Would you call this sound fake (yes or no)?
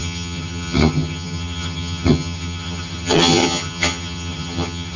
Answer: yes